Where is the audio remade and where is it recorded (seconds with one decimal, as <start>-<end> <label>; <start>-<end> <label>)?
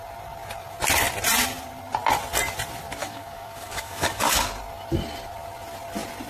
0.0-3.0 recorded; 3.0-4.5 remade; 4.5-6.3 recorded